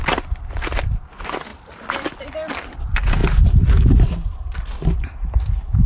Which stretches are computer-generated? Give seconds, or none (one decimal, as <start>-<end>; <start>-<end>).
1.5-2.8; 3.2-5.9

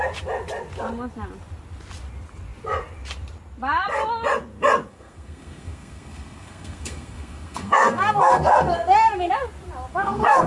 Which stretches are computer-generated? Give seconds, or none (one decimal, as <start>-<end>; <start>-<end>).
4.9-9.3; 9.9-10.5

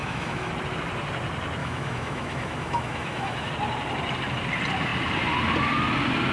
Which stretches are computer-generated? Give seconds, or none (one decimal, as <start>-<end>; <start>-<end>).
0.0-0.5; 1.6-3.5

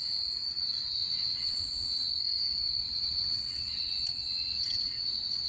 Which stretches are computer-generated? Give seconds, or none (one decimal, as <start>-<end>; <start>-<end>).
1.0-2.1; 2.8-5.5